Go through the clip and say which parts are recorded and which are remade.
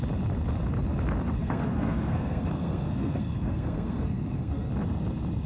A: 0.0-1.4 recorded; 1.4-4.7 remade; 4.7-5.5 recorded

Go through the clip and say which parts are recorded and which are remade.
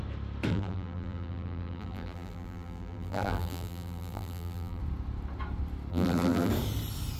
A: 0.0-0.5 recorded; 0.5-4.8 remade; 4.8-5.9 recorded; 5.9-6.5 remade; 6.5-7.2 recorded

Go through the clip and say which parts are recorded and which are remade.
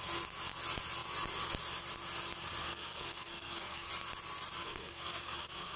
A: 0.0-2.6 recorded; 2.6-3.9 remade; 3.9-4.6 recorded; 4.6-5.8 remade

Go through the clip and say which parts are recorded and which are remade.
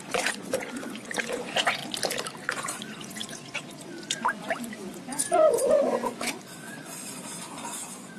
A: 0.0-1.8 remade; 1.8-2.5 recorded; 2.5-8.2 remade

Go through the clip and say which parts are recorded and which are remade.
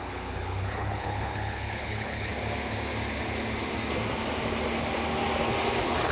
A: 0.0-2.3 remade; 2.3-6.1 recorded